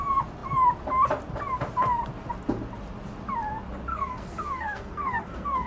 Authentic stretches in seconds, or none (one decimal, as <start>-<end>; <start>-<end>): 0.0-3.9

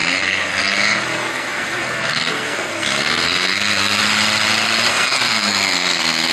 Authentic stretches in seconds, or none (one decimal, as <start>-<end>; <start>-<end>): 4.0-4.9

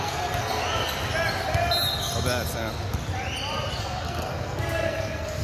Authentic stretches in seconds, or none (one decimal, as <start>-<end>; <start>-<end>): 0.6-3.8